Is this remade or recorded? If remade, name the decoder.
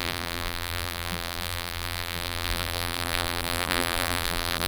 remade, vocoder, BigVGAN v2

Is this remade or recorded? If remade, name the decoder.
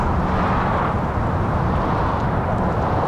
recorded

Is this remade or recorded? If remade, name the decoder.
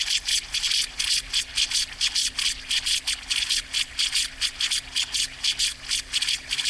recorded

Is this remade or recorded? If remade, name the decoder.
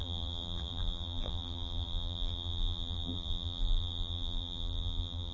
remade, vocoder, BigVGAN v2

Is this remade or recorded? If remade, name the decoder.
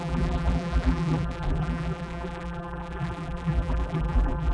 remade, vocoder, BigVGAN v2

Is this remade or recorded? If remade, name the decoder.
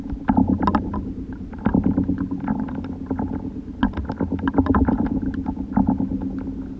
recorded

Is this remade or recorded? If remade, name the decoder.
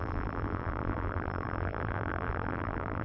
remade, vocoder, BigVGAN v2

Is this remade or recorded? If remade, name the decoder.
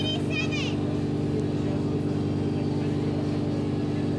recorded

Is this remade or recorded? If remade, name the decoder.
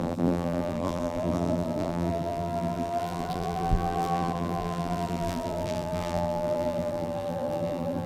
remade, vocoder, BigVGAN v2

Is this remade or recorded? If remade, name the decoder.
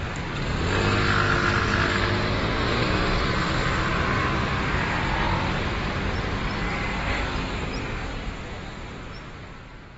recorded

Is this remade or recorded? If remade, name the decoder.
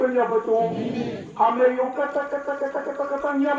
remade, vocoder, BigVGAN v2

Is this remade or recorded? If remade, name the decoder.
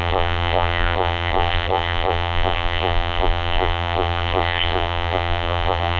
remade, vocoder, BigVGAN v2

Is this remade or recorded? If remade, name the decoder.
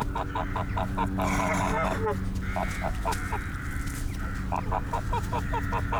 recorded